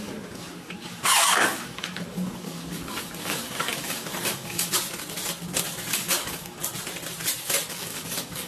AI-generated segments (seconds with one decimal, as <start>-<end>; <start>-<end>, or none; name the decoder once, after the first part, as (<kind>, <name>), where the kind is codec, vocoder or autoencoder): 0.0-4.7 (codec, DAC); 5.9-6.6; 7.7-8.5